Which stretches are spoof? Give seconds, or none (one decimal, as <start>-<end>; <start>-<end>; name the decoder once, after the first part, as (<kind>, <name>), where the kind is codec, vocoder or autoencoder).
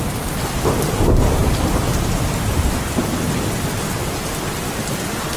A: 1.4-4.6 (vocoder, BigVGAN v2)